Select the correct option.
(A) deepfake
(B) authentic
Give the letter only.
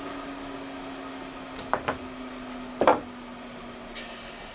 B